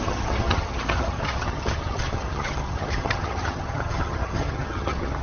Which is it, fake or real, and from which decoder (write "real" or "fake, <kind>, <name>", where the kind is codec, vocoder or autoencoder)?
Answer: fake, vocoder, HiFi-GAN